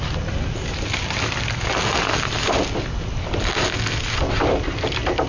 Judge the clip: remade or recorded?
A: recorded